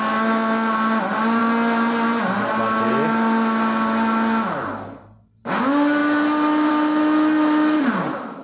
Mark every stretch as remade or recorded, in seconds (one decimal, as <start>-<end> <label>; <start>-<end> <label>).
0.0-8.4 recorded